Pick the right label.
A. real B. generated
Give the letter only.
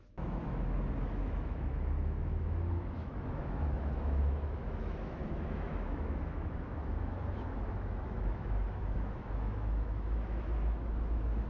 B